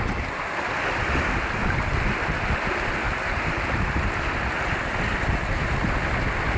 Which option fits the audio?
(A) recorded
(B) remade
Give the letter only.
A